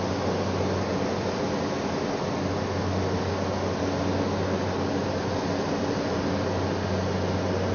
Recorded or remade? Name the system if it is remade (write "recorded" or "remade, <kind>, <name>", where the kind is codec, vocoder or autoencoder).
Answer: recorded